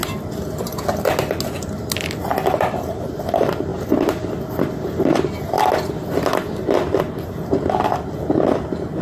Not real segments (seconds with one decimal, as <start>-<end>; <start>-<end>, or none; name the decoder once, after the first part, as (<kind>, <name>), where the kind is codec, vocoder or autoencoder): 2.2-3.7 (vocoder, BigVGAN v2); 7.5-9.0